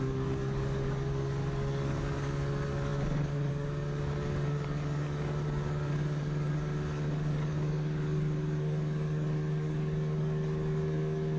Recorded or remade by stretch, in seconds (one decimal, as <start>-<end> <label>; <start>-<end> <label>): 0.0-11.4 remade